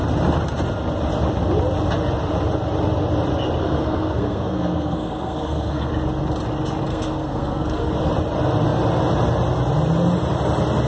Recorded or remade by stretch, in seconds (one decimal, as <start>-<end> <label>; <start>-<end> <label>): 0.0-3.6 recorded; 3.6-5.9 remade; 5.9-6.9 recorded; 6.9-7.9 remade; 7.9-10.9 recorded